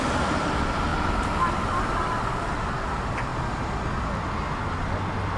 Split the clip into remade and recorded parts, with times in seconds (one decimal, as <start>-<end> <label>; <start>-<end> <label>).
0.0-0.9 remade; 0.9-2.6 recorded; 2.6-3.3 remade; 3.3-5.4 recorded